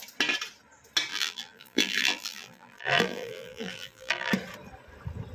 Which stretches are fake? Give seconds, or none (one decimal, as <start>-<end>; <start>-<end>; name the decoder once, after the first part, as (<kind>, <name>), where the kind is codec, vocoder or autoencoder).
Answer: 1.1-4.3 (vocoder, BigVGAN v2)